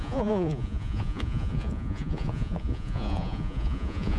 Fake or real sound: fake